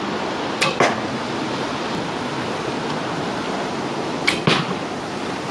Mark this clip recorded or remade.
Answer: recorded